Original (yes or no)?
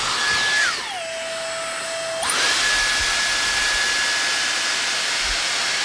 yes